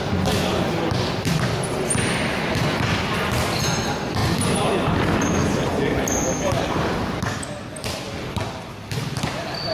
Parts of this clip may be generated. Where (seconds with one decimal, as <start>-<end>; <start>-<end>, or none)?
none